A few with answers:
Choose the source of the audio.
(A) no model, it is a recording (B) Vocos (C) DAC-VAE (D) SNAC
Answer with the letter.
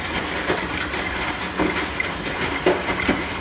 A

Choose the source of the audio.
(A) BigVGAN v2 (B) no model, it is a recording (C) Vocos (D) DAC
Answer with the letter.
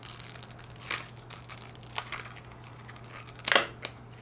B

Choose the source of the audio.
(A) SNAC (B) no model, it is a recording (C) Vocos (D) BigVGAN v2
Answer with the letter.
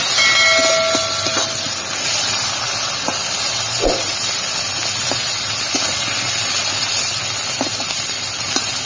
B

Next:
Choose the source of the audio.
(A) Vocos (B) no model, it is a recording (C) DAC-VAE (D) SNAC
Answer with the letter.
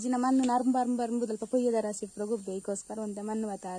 B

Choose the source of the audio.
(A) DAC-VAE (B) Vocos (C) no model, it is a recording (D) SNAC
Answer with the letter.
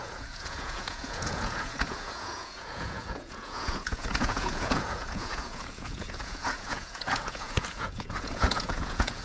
B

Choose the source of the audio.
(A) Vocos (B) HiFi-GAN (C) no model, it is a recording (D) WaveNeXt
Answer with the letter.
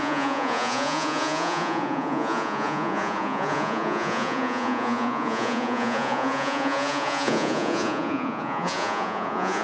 A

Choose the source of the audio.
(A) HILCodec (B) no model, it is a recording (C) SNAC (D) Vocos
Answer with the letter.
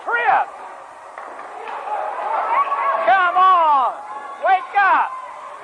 B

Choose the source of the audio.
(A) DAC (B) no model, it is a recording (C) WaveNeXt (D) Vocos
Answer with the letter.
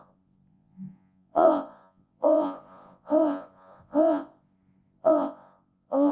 D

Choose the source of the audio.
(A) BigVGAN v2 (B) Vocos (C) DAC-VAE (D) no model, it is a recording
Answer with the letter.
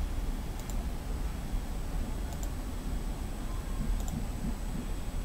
D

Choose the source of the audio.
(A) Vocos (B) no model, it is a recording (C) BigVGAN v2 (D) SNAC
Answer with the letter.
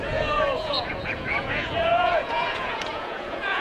A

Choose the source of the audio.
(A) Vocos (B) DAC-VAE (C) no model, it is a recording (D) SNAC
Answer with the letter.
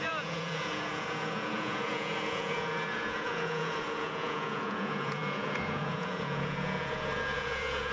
A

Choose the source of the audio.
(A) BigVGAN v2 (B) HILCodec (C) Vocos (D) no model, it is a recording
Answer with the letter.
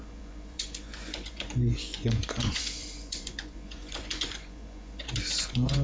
C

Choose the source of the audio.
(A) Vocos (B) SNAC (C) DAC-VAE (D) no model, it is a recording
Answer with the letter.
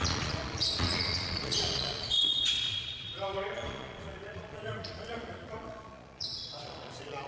A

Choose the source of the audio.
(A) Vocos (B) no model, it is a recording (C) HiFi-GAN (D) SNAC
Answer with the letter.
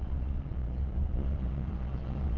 A